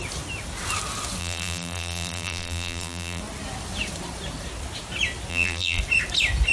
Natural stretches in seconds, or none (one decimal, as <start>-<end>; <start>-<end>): 0.0-1.2; 3.2-5.3; 5.8-6.5